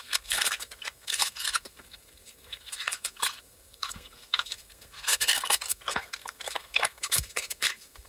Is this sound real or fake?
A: fake